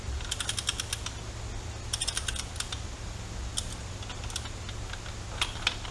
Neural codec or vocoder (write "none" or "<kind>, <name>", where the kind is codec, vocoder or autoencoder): none